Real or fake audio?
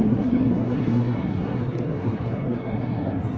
fake